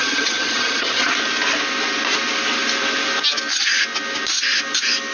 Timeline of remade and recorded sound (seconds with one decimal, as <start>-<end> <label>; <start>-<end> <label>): 0.0-1.1 remade; 1.1-5.1 recorded